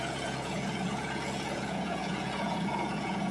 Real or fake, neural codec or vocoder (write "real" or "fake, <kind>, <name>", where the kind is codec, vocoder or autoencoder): fake, vocoder, Vocos